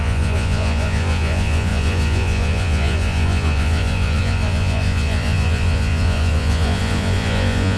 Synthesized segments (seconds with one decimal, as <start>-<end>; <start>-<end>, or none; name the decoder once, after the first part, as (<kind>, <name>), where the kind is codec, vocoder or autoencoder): 0.0-7.8 (vocoder, Vocos)